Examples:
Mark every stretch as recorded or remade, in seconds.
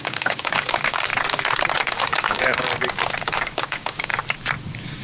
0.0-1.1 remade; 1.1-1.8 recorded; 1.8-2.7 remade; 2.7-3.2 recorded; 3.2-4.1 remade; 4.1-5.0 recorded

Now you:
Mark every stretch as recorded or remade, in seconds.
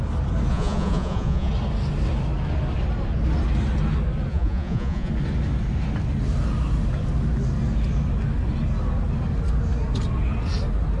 0.0-0.5 recorded; 0.5-1.5 remade; 1.5-4.3 recorded; 4.3-5.1 remade; 5.1-11.0 recorded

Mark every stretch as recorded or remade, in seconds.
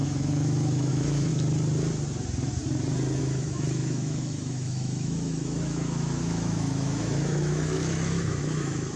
0.0-1.3 remade; 1.3-3.2 recorded; 3.2-9.0 remade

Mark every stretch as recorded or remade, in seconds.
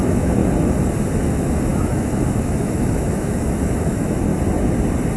0.0-0.4 remade; 0.4-1.2 recorded; 1.2-4.3 remade; 4.3-5.2 recorded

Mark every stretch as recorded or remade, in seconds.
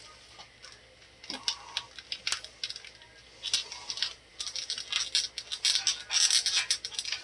0.0-7.2 recorded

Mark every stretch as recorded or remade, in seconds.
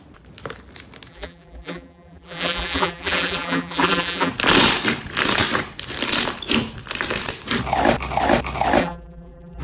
0.0-1.1 recorded; 1.1-4.3 remade; 4.3-8.8 recorded; 8.8-9.6 remade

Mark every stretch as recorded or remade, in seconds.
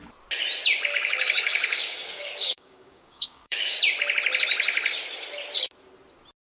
0.0-0.9 recorded; 0.9-3.8 remade; 3.8-6.4 recorded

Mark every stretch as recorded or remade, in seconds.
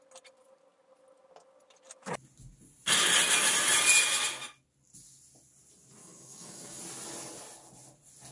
0.0-6.0 recorded; 6.0-6.8 remade; 6.8-8.3 recorded